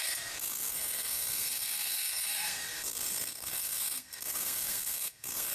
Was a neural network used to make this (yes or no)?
yes